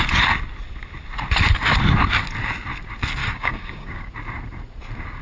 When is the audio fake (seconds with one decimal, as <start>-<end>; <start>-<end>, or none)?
3.2-4.1